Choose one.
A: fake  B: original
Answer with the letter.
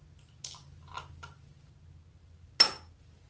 B